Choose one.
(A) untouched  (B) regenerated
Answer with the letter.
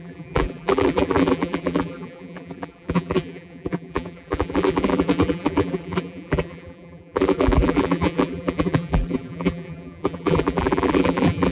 B